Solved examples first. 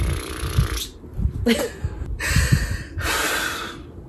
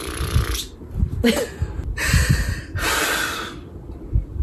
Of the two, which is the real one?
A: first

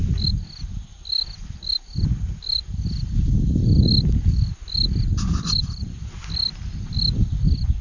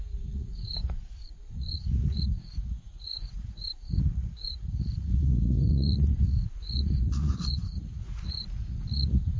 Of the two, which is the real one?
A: first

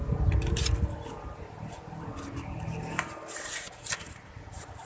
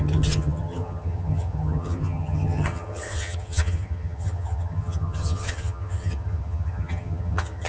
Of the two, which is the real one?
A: first